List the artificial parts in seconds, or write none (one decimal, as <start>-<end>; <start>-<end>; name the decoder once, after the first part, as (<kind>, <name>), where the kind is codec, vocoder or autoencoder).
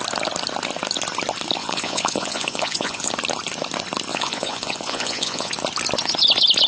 1.6-3.1 (vocoder, Vocos); 4.1-5.5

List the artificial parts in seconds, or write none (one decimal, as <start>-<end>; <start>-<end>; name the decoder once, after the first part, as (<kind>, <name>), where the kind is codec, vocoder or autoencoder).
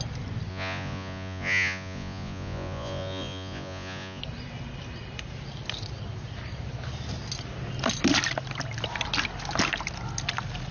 0.5-4.2 (vocoder, Vocos)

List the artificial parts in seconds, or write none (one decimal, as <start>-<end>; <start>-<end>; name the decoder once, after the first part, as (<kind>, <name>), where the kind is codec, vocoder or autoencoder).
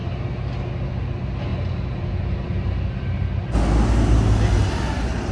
none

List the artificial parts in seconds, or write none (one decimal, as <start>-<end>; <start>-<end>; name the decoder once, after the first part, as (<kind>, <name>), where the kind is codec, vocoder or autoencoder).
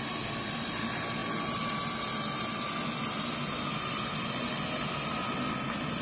none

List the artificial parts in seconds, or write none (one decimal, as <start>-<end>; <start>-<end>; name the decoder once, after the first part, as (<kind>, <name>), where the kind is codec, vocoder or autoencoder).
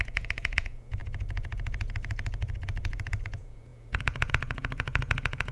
0.0-5.5 (vocoder, Vocos)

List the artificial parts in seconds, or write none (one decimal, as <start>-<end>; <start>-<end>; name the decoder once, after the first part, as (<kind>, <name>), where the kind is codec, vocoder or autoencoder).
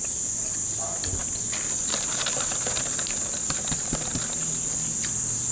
none